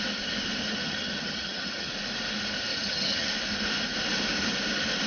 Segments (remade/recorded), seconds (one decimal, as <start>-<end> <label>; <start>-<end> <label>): 0.0-0.6 recorded; 0.6-1.9 remade; 1.9-2.7 recorded; 2.7-3.3 remade; 3.3-5.1 recorded

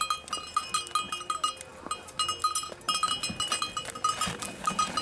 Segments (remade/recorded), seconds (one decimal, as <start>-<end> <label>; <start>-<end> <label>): 0.0-5.0 recorded

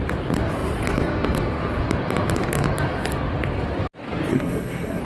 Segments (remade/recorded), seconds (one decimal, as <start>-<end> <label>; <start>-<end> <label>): 0.0-4.3 recorded; 4.3-5.0 remade

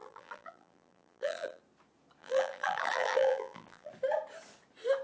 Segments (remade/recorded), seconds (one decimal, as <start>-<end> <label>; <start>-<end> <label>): 0.0-1.6 remade; 1.6-2.2 recorded; 2.2-3.9 remade; 3.9-5.0 recorded

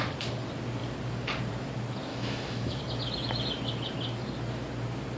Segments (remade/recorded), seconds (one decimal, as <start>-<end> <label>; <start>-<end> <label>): 0.0-2.1 recorded; 2.1-2.8 remade; 2.8-5.2 recorded

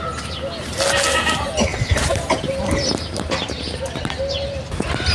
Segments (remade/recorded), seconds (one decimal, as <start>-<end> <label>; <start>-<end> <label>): 0.0-1.7 recorded; 1.7-3.8 remade; 3.8-5.1 recorded